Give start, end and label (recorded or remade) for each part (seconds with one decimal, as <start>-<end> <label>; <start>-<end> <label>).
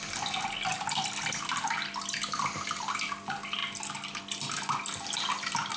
0.0-5.8 recorded